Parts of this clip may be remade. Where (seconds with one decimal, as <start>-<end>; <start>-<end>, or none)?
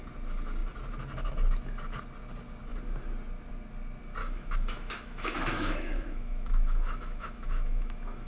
4.2-8.3